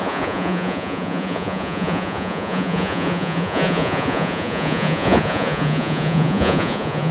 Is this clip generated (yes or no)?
yes